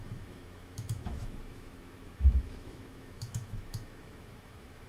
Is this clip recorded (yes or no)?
no